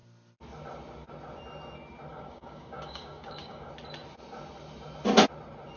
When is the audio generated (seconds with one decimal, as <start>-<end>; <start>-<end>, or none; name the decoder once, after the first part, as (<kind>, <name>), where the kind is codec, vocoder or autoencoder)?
2.1-3.7 (codec, DAC)